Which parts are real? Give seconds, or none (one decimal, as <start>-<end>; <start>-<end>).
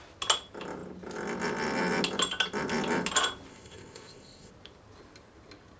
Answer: 0.0-3.5; 4.5-5.8